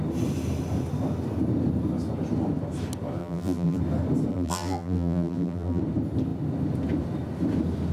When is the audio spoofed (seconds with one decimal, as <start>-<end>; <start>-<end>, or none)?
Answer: 3.2-3.8; 4.3-5.8